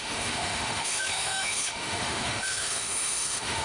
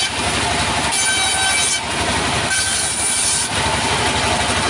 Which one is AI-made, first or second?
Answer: first